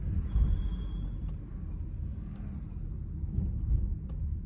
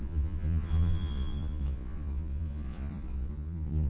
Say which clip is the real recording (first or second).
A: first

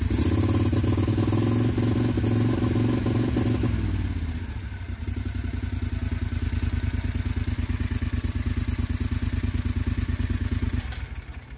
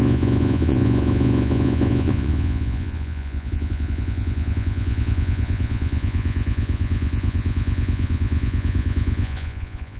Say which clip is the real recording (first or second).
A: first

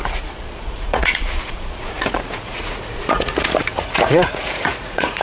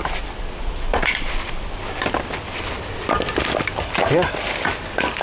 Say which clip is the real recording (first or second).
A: second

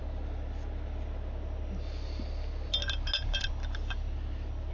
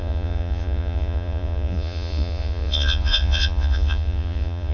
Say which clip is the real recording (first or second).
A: first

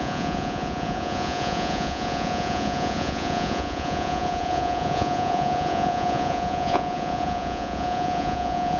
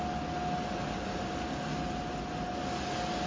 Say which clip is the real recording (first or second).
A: second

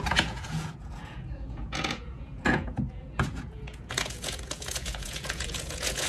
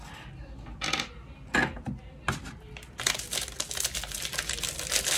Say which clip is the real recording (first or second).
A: second